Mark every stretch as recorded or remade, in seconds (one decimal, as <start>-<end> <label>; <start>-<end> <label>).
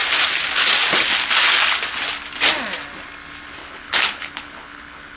0.0-3.6 recorded; 3.6-5.2 remade